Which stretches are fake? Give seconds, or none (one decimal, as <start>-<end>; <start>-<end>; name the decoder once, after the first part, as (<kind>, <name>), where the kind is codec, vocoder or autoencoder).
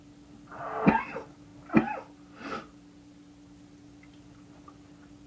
none